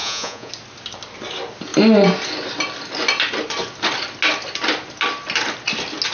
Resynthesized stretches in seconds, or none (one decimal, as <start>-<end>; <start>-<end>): 0.0-0.5